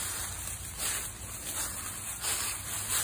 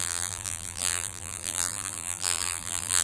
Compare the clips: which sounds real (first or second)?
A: first